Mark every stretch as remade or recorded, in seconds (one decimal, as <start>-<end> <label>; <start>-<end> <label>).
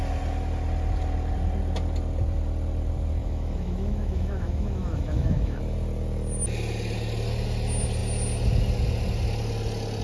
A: 0.0-3.2 recorded; 3.2-5.6 remade; 5.6-10.0 recorded